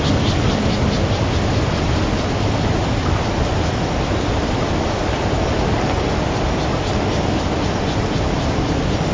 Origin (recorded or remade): recorded